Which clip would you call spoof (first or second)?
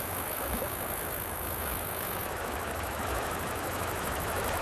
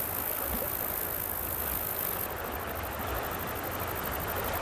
first